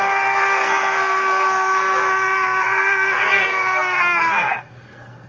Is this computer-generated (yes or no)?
yes